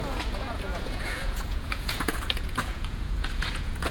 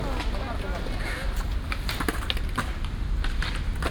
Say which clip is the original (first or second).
second